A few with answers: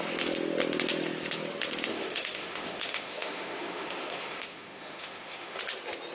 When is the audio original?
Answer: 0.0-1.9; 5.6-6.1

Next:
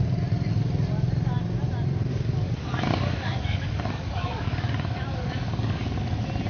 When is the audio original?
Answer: 0.0-2.1; 6.0-6.5

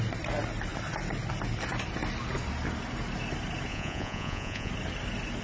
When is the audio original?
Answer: 0.0-3.7; 4.7-5.4